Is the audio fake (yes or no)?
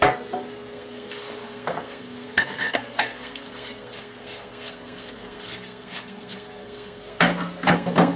yes